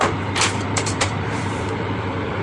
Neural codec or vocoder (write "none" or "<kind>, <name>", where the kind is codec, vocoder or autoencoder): vocoder, BigVGAN v2